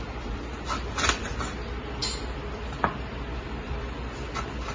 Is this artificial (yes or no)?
no